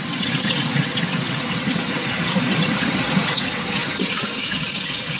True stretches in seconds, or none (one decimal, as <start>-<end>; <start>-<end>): none